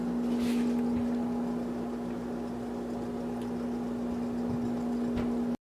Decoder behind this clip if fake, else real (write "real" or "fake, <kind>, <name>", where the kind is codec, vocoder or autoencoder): real